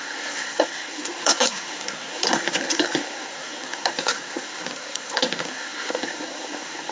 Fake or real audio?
fake